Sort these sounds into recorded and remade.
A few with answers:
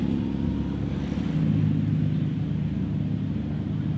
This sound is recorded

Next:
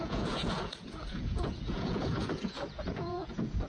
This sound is remade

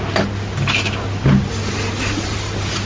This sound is recorded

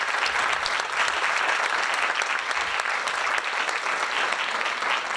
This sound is recorded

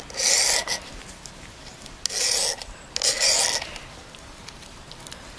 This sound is recorded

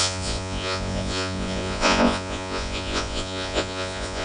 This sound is remade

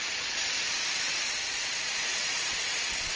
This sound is remade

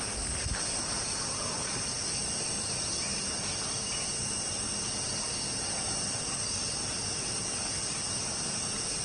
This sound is recorded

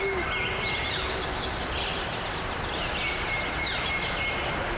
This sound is recorded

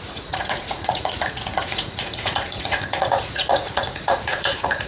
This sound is remade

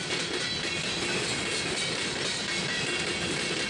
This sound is recorded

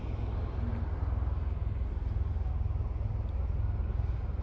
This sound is recorded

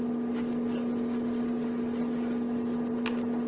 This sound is recorded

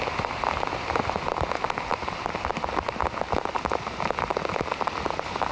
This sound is recorded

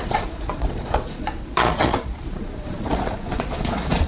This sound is remade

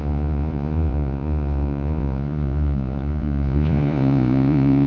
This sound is remade